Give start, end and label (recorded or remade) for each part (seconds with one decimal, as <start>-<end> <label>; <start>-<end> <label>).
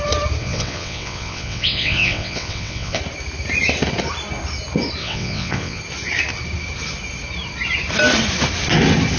0.0-0.4 recorded; 0.4-3.0 remade; 3.0-5.0 recorded; 5.0-5.8 remade; 5.8-9.2 recorded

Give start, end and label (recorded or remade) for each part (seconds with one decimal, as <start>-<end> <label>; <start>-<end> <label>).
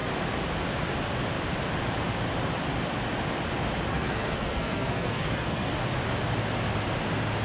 0.0-3.9 recorded; 3.9-5.7 remade; 5.7-7.4 recorded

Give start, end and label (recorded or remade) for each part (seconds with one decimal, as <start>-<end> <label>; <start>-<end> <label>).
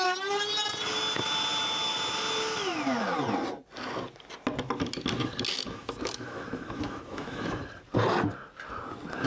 0.0-5.5 recorded; 5.5-7.6 remade; 7.6-9.3 recorded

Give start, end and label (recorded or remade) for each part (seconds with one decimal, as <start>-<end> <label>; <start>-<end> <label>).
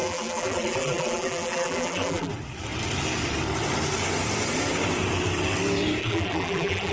0.0-2.3 remade; 2.3-6.0 recorded; 6.0-6.9 remade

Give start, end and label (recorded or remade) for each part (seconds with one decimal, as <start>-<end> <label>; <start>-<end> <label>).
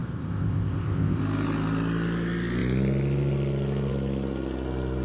0.0-1.2 remade; 1.2-5.0 recorded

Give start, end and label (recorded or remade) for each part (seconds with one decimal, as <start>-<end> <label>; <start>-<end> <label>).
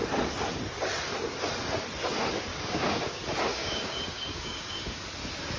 0.0-2.5 recorded; 2.5-3.2 remade; 3.2-3.6 recorded; 3.6-5.0 remade; 5.0-5.6 recorded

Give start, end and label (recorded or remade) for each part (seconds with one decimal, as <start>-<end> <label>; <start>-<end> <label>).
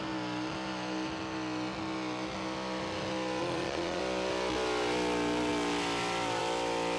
0.0-3.4 recorded; 3.4-4.0 remade; 4.0-7.0 recorded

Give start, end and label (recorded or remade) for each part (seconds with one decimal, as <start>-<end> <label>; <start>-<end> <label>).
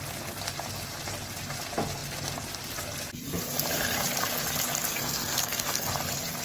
0.0-4.9 recorded; 4.9-5.9 remade; 5.9-6.4 recorded